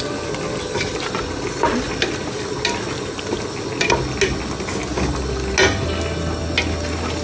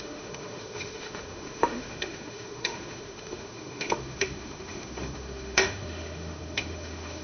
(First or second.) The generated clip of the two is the second